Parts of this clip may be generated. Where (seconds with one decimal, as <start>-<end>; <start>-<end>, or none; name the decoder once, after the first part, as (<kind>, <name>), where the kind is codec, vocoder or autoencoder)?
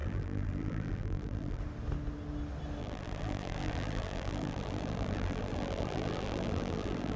0.0-1.6 (vocoder, BigVGAN v2); 2.8-7.2